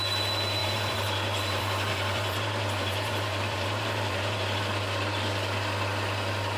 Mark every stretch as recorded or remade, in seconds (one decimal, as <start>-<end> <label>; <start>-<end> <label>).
0.0-0.6 recorded; 0.6-4.6 remade; 4.6-6.6 recorded